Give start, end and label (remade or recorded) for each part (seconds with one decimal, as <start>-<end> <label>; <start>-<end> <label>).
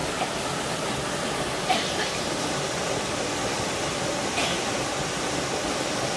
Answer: 0.0-6.2 recorded